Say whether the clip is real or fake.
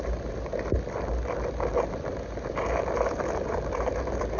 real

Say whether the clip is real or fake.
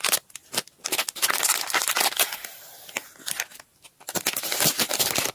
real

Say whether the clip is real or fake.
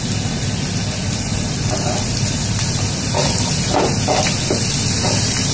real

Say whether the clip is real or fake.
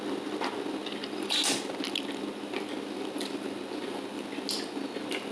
real